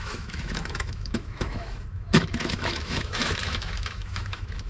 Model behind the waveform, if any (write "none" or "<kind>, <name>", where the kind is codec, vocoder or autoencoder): autoencoder, DAC-VAE